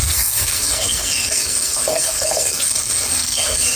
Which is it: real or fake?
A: fake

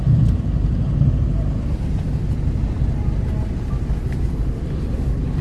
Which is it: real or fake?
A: real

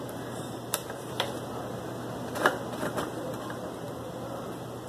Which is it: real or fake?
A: real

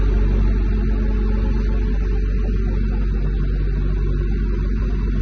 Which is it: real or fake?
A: real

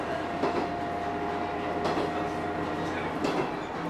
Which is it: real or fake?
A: real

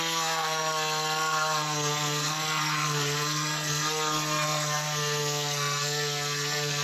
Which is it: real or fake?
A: fake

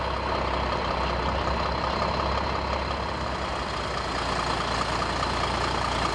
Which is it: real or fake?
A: real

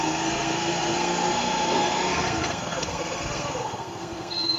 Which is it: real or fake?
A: fake